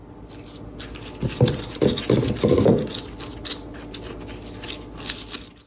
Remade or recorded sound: recorded